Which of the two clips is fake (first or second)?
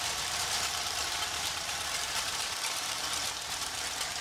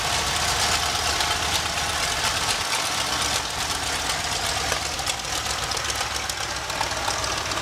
first